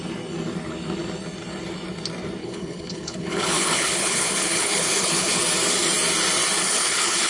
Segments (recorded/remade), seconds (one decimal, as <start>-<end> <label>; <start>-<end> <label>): 0.0-2.4 recorded; 2.4-5.4 remade; 5.4-6.6 recorded; 6.6-7.3 remade